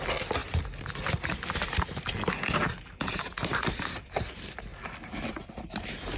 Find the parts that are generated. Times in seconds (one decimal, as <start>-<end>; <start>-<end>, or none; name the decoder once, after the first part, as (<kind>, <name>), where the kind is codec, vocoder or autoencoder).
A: none